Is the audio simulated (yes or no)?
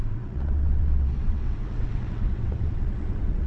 yes